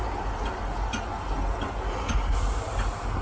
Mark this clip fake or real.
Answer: real